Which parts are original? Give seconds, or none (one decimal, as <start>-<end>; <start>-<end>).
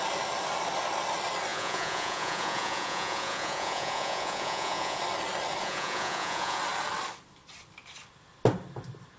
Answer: 0.0-1.5; 5.0-5.6; 6.6-9.2